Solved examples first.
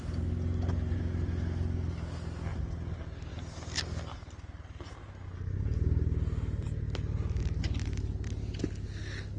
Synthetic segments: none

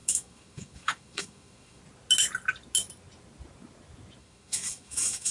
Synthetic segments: 0.0-1.8; 4.2-5.3

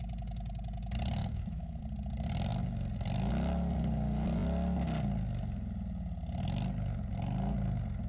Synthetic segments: 1.2-1.8

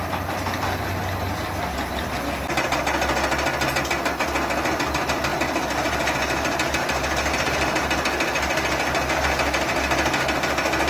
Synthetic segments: none

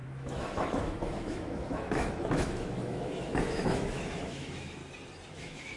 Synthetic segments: 0.0-4.8; 5.3-5.8

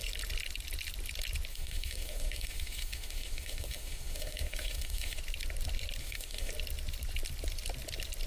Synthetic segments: 1.5-5.2; 6.0-6.5

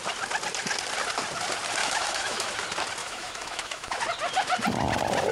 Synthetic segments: 1.8-2.5; 3.0-4.0